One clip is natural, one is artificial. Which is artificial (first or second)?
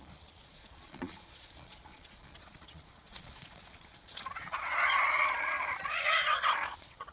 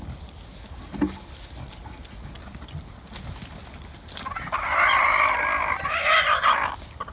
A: first